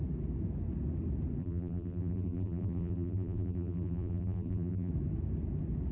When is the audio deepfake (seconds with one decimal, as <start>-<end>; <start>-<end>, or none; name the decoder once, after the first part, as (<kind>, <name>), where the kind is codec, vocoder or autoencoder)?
1.4-4.9 (vocoder, BigVGAN v2)